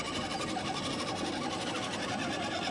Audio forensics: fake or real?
real